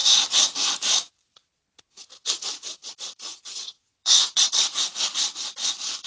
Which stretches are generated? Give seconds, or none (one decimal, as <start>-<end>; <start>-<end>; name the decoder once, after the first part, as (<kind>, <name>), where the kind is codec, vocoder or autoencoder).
3.4-4.5 (vocoder, Vocos)